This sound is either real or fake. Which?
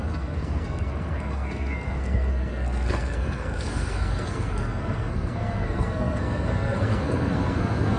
fake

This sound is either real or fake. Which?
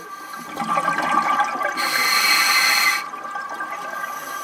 real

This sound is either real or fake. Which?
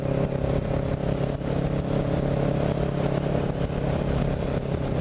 real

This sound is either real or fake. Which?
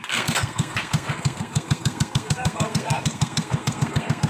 fake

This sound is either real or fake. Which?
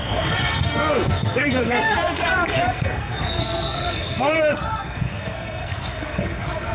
fake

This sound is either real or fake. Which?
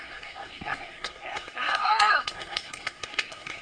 fake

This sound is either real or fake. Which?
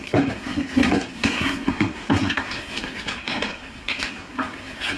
fake